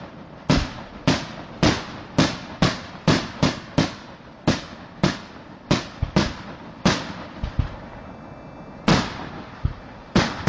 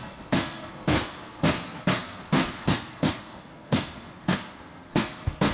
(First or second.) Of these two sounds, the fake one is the second